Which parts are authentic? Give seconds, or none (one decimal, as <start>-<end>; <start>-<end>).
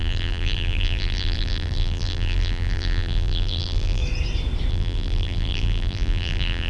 4.0-4.7